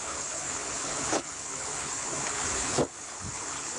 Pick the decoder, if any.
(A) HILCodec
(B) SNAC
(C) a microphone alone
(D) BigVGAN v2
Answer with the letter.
A